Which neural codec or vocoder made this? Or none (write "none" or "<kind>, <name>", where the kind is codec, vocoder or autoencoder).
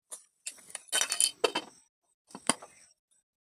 none